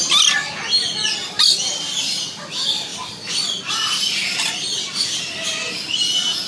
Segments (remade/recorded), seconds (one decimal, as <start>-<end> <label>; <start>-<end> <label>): 0.0-6.5 recorded